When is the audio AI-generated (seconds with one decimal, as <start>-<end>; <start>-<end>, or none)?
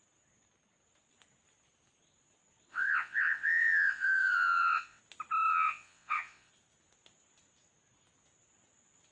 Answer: 2.7-5.0; 5.5-6.5